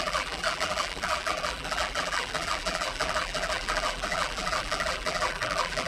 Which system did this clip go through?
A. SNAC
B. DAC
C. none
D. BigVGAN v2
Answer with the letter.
D